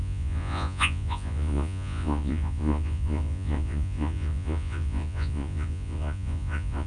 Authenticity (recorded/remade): remade